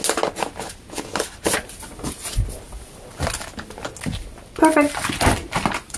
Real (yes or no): yes